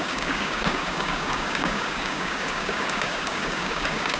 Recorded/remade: remade